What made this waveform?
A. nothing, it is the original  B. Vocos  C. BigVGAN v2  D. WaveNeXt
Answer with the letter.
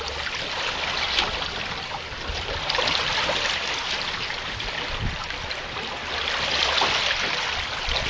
A